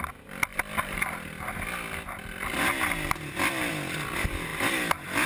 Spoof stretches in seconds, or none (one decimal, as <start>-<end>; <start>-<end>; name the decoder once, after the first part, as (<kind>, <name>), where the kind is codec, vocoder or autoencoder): none